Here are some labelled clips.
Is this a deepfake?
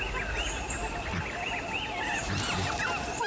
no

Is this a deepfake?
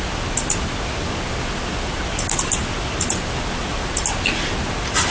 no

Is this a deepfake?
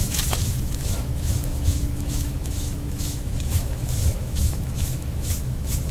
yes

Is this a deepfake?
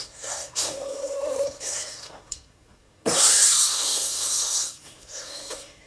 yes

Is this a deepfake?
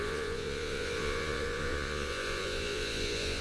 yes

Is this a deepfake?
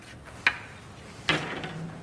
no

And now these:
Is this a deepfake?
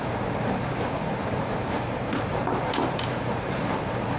yes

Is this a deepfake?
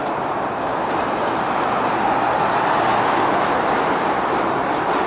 no